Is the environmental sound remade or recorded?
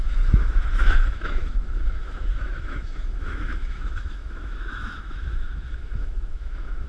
remade